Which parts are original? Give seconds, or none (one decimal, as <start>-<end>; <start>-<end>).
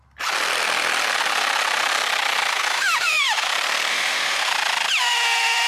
0.0-2.5; 3.5-3.9; 4.5-5.7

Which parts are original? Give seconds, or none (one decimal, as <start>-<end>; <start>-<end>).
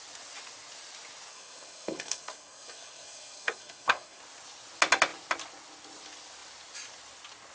0.0-1.3; 4.2-7.5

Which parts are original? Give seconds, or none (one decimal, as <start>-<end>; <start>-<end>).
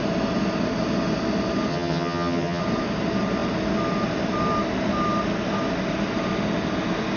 0.0-1.7; 2.6-7.2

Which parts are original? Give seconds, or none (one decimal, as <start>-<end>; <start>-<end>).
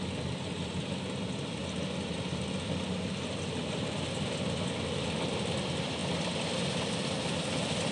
1.6-2.1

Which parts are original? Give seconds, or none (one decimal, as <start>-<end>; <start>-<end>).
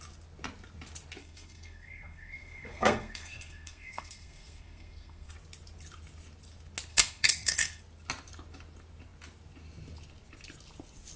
0.0-1.2; 5.3-6.9; 7.8-11.2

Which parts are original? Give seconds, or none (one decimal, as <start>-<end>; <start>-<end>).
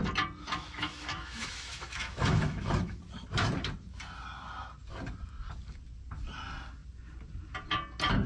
0.0-0.5; 3.0-8.3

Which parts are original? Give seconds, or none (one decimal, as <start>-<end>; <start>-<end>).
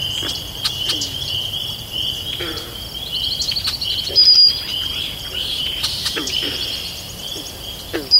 0.0-4.7; 6.5-8.2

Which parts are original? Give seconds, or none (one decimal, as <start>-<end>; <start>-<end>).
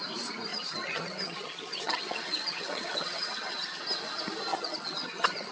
0.0-0.5; 3.8-4.5